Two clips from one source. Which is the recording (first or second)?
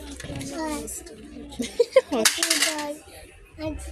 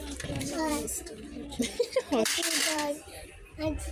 first